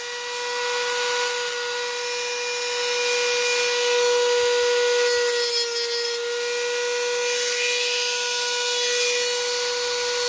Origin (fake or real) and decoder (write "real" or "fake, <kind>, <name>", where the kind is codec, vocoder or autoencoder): real